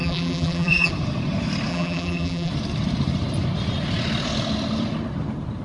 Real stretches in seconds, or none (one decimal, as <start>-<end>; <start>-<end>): 0.9-1.7; 2.5-5.6